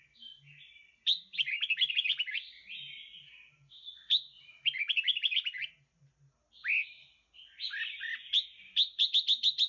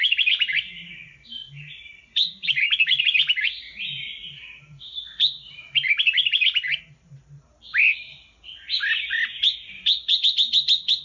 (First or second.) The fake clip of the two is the second